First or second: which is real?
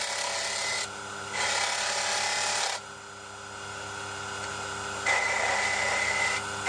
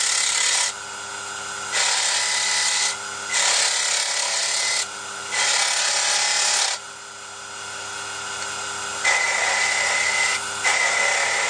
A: second